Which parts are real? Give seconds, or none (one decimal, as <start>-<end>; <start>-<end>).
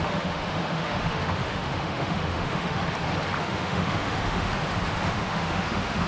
2.8-3.4; 4.5-5.1